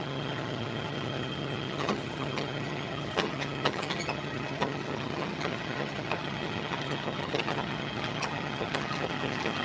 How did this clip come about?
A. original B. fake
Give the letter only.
B